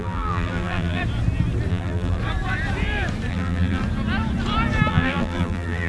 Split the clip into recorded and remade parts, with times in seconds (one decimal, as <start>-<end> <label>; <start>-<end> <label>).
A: 0.0-1.0 remade; 1.0-1.7 recorded; 1.7-2.2 remade; 2.2-3.3 recorded; 3.3-3.8 remade; 3.8-4.9 recorded; 4.9-5.9 remade